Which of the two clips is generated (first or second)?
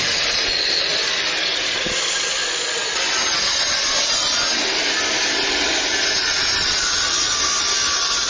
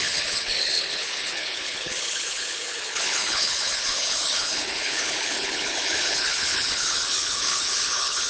second